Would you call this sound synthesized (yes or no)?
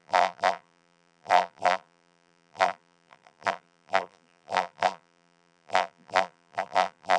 yes